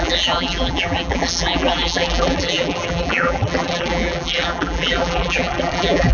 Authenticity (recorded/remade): remade